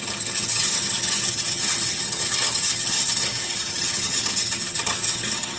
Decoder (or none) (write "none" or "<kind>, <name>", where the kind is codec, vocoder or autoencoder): vocoder, HiFi-GAN